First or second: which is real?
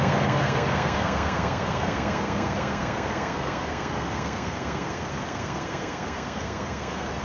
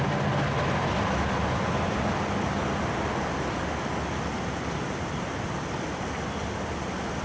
second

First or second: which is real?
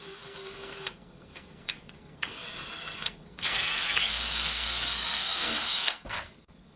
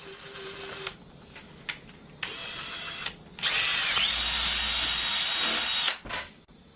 second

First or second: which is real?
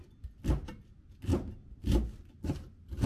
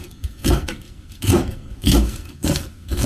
first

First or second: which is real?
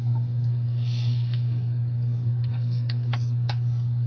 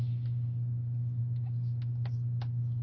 second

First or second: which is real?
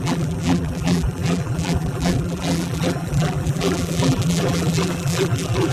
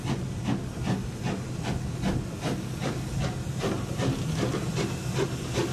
second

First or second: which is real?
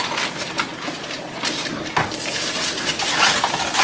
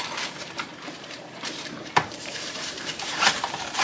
first